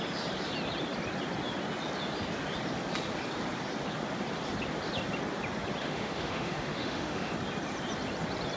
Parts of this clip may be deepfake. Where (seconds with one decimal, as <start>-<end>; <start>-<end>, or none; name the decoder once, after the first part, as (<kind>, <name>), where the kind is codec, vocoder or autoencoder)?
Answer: 5.8-7.3 (autoencoder, DAC-VAE)